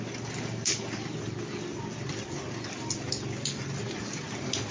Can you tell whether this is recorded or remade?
recorded